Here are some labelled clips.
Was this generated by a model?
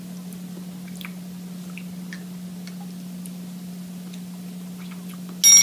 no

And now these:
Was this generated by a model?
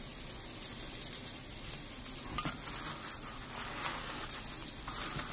no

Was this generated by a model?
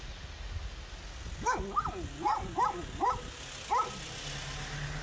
no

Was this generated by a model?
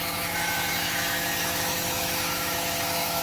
yes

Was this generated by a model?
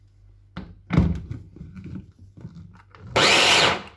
no